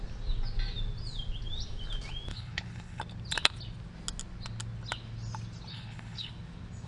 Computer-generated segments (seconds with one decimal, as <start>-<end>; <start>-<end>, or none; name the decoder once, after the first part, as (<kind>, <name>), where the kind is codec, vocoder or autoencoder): 2.3-3.0 (codec, HILCodec); 5.7-6.3